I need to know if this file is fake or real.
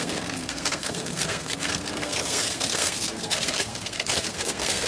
fake